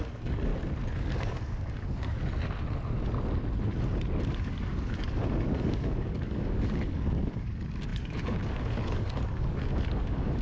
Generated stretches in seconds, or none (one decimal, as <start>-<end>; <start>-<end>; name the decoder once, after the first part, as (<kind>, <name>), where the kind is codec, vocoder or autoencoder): 0.0-0.5 (codec, DAC); 1.0-2.2; 4.3-10.4